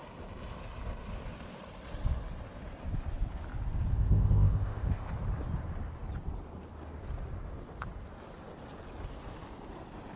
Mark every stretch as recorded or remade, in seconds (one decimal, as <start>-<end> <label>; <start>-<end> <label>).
0.0-3.9 recorded; 3.9-5.1 remade; 5.1-10.2 recorded